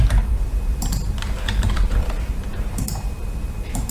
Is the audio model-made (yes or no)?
yes